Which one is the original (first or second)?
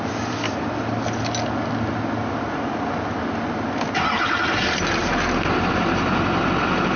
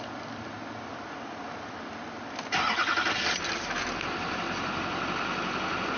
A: first